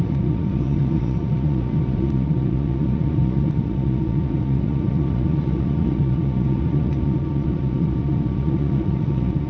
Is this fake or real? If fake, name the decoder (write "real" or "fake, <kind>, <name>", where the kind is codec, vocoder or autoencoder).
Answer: fake, vocoder, Vocos